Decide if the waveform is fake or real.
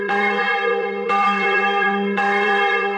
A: fake